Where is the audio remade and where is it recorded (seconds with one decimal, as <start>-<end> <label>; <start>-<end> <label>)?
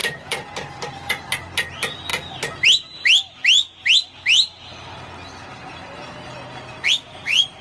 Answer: 0.0-1.3 remade; 1.3-7.6 recorded